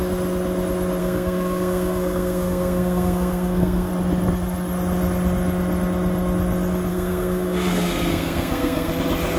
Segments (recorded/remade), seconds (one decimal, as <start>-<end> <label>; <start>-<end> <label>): 0.0-1.0 recorded; 1.0-3.9 remade; 3.9-6.9 recorded; 6.9-8.9 remade; 8.9-9.4 recorded

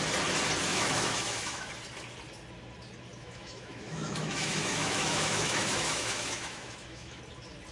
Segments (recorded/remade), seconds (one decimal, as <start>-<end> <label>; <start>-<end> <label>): 0.0-0.7 recorded; 0.7-1.7 remade; 1.7-3.2 recorded; 3.2-7.2 remade; 7.2-7.7 recorded

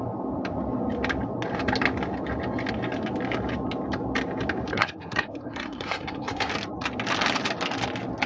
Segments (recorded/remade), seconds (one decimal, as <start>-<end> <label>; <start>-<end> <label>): 0.0-4.7 recorded; 4.7-6.5 remade; 6.5-8.3 recorded

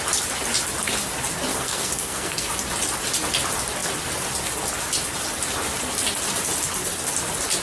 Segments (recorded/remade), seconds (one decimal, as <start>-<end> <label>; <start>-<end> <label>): 0.0-1.5 recorded; 1.5-2.5 remade; 2.5-7.6 recorded

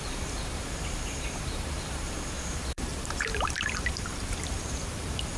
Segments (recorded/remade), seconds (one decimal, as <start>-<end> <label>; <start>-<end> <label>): 0.0-5.4 remade

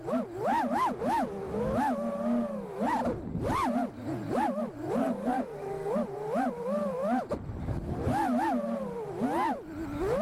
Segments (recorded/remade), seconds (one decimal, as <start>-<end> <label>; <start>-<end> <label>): 0.0-5.0 recorded; 5.0-5.9 remade; 5.9-10.2 recorded

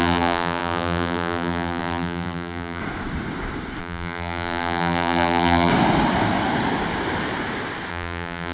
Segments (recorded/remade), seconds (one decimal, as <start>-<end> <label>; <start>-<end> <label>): 0.0-2.8 remade; 2.8-3.8 recorded; 3.8-5.7 remade; 5.7-7.9 recorded; 7.9-8.5 remade